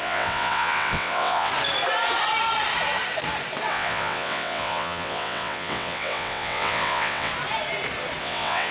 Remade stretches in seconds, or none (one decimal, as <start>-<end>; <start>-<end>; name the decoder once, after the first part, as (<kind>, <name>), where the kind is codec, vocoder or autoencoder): 0.0-1.5 (vocoder, WaveNeXt); 3.7-7.3; 8.2-8.7